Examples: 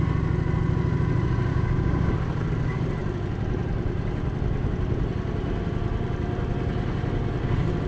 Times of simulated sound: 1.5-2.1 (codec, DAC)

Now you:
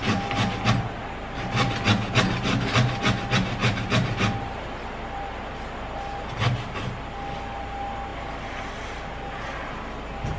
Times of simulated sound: 3.6-4.2 (vocoder, BigVGAN v2)

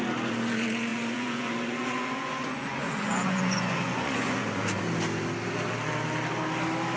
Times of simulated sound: 0.9-4.8 (vocoder, Vocos)

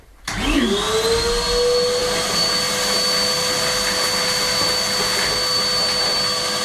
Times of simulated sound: none

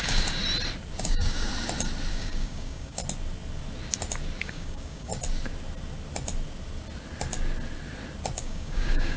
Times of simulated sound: 0.0-0.4 (codec, DAC); 1.0-1.5; 2.1-3.0; 4.4-5.1; 8.4-9.2

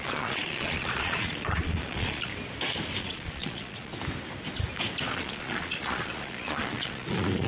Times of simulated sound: 0.0-2.3 (vocoder, Vocos); 3.0-3.9; 5.1-7.5

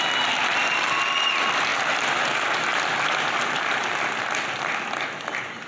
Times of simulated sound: none